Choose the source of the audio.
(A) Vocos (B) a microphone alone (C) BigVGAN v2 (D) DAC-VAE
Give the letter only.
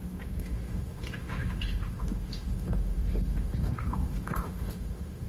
D